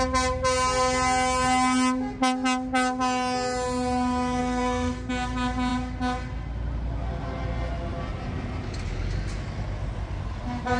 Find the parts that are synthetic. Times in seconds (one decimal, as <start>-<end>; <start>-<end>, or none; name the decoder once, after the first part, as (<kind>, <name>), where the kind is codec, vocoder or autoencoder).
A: 4.4-5.1 (codec, SNAC)